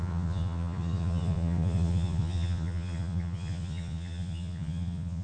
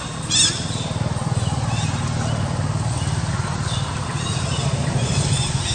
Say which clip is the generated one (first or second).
first